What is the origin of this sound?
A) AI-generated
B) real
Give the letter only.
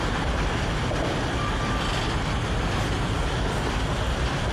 B